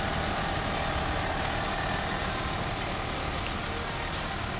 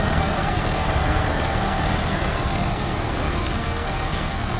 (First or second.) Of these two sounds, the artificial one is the second